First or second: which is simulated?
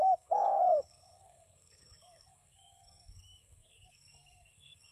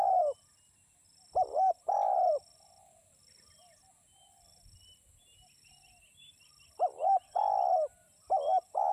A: first